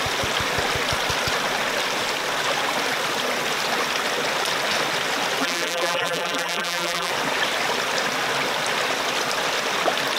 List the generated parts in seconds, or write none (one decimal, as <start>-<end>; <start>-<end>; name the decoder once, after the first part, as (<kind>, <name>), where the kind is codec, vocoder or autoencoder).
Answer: 5.4-7.1 (vocoder, BigVGAN v2)